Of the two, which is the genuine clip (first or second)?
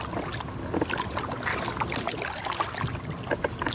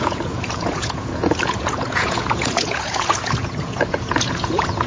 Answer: first